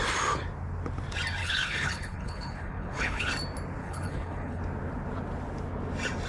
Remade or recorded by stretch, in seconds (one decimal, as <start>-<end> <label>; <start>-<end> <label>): 0.0-1.4 recorded; 1.4-3.3 remade; 3.3-3.8 recorded; 3.8-4.6 remade; 4.6-6.3 recorded